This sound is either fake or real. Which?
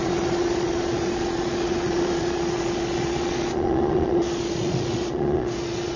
fake